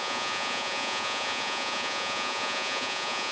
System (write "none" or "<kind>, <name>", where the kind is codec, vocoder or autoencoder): vocoder, Vocos